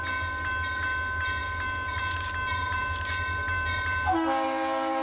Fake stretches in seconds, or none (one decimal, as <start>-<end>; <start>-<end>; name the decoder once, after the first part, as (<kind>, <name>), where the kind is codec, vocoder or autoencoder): none